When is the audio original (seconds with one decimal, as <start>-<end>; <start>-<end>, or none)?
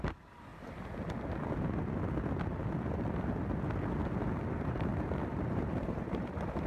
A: 0.5-4.5; 4.9-5.5